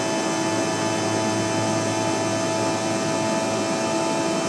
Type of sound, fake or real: real